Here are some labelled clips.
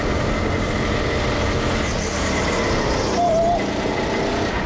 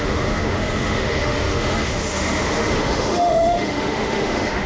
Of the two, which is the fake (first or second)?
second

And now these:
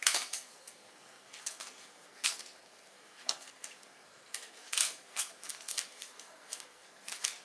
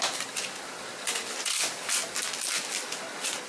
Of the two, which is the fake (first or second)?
first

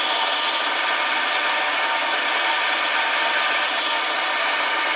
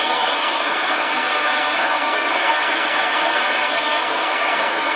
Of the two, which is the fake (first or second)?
second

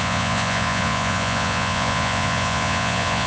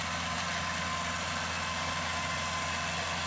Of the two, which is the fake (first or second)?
first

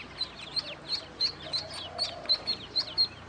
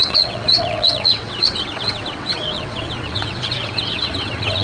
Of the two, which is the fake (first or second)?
second